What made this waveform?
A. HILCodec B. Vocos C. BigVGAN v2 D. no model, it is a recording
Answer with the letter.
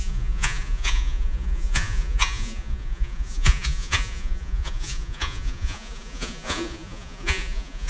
B